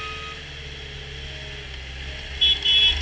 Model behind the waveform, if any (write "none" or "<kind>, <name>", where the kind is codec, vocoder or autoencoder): none